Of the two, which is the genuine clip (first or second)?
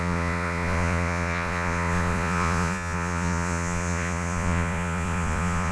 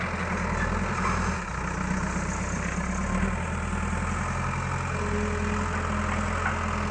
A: second